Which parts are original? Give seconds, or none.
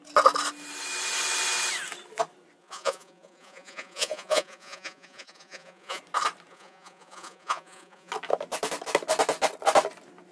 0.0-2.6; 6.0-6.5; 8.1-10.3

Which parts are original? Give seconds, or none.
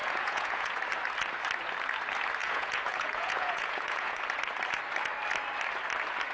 0.8-2.4; 4.2-6.3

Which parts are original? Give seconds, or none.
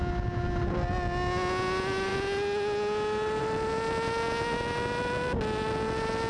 0.0-6.3